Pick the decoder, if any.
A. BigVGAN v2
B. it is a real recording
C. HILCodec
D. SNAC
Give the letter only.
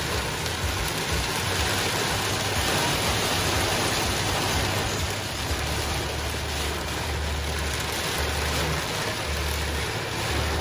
B